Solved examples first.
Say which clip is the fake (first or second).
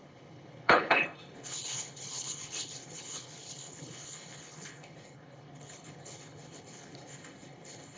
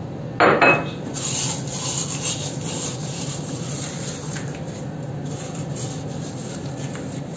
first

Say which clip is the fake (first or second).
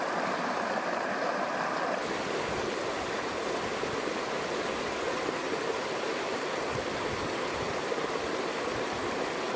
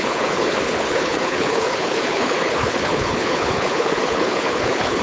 second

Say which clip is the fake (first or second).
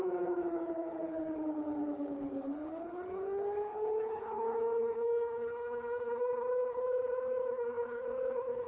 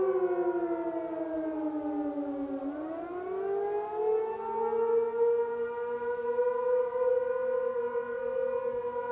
first